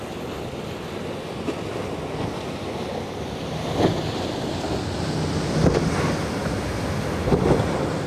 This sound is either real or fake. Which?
real